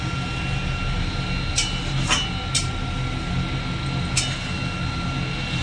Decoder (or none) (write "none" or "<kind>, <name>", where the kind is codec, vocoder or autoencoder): none